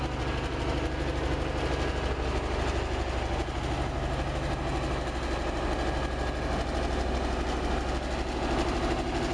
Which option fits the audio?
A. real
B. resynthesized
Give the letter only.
A